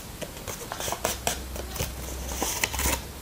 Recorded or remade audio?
recorded